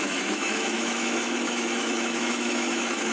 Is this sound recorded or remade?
remade